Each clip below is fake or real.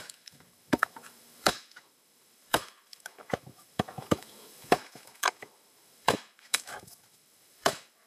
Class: fake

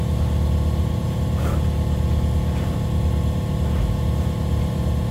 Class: real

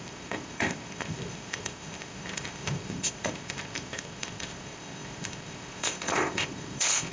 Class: fake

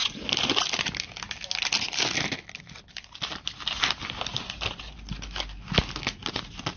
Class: real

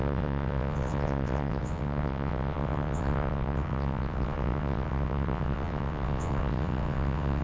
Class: fake